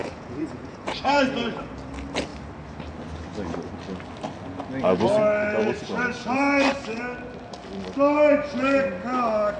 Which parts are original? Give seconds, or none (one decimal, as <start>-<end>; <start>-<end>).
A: 1.7-5.6; 7.0-9.6

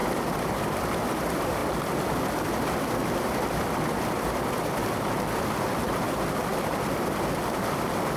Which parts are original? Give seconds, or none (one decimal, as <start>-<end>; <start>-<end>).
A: 0.0-0.6